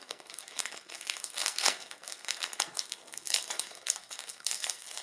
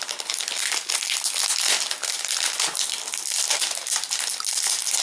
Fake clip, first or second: first